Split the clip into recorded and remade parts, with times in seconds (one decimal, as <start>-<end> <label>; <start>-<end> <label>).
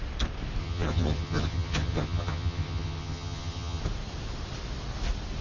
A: 0.0-0.6 recorded; 0.6-3.8 remade; 3.8-5.4 recorded